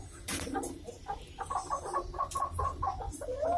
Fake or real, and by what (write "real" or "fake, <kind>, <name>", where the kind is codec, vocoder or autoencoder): fake, vocoder, BigVGAN v2